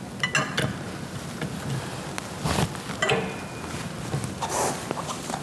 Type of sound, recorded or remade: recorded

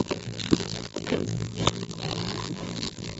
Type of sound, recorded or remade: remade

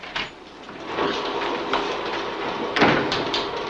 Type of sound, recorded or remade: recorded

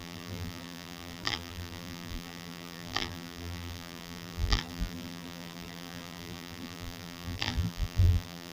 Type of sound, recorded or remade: remade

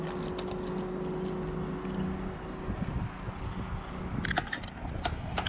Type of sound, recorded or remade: recorded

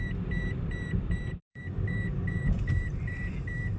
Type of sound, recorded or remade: remade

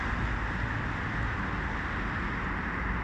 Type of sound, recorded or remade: recorded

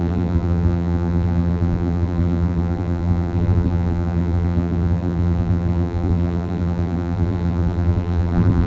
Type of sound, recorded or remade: remade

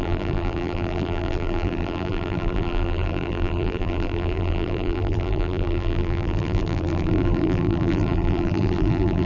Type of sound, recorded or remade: remade